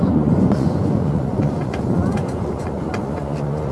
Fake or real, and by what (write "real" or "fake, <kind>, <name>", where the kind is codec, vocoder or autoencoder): fake, vocoder, Vocos